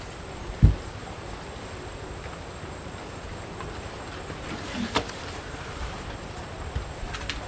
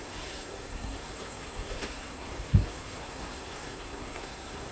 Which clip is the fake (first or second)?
second